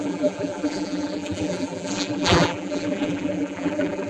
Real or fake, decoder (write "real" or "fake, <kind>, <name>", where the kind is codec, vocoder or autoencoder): fake, vocoder, BigVGAN v2